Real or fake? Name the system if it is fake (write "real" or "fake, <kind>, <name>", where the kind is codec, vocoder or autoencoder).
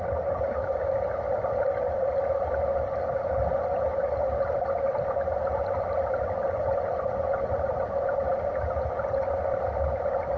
real